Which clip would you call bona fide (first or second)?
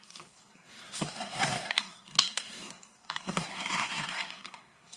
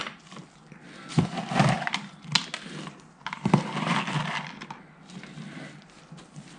second